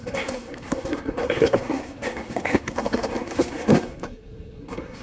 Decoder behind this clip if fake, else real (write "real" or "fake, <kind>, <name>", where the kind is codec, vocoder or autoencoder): fake, codec, SNAC